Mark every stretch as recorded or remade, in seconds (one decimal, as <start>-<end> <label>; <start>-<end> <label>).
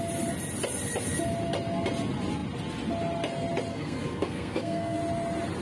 0.0-3.7 recorded; 3.7-5.0 remade; 5.0-5.6 recorded